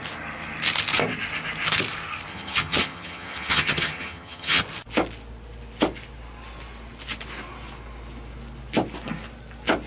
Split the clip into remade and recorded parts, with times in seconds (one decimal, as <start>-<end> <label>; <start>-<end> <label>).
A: 0.0-2.3 recorded; 2.3-4.6 remade; 4.6-9.9 recorded